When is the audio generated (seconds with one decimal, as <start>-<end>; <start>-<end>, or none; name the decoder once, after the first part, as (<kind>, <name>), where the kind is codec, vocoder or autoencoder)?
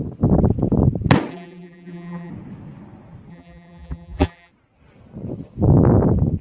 1.3-2.3 (vocoder, BigVGAN v2); 3.3-4.5